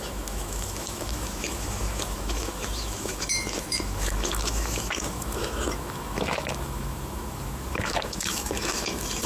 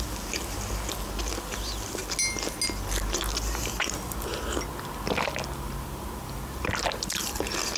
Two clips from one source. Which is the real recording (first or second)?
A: second